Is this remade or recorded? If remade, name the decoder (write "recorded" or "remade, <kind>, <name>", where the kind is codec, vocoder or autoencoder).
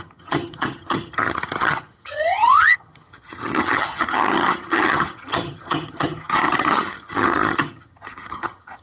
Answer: remade, vocoder, HiFi-GAN